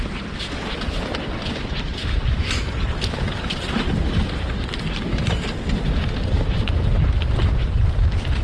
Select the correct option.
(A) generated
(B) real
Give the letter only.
A